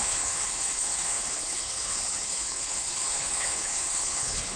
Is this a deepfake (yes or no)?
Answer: yes